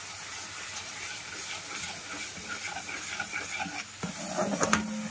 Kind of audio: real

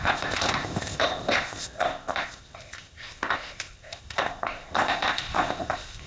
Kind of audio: fake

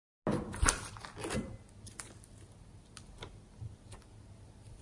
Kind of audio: real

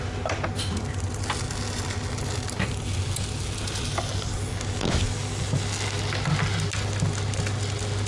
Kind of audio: real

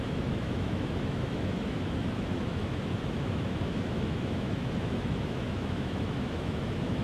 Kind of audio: fake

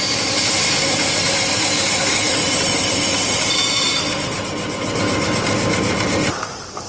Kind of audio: fake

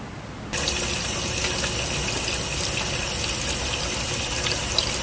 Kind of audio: real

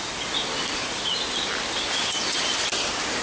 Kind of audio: real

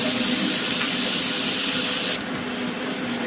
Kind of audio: real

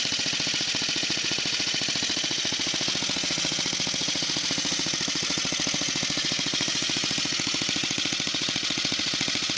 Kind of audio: fake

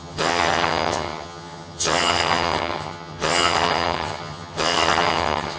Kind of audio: fake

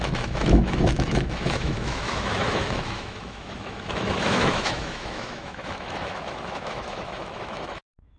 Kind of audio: fake